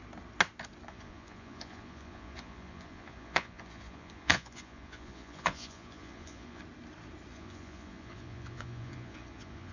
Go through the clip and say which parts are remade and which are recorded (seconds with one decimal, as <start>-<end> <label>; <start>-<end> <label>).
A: 0.0-0.9 recorded; 0.9-6.6 remade; 6.6-7.3 recorded; 7.3-9.7 remade